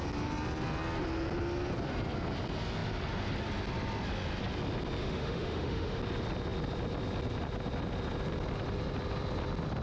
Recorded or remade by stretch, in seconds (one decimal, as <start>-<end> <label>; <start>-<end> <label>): 0.0-5.0 recorded; 5.0-6.0 remade; 6.0-9.8 recorded

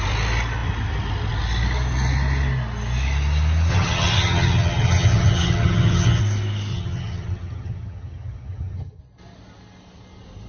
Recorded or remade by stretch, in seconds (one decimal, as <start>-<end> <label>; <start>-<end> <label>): 0.0-3.7 recorded; 3.7-6.2 remade; 6.2-6.7 recorded; 6.7-9.0 remade; 9.0-10.5 recorded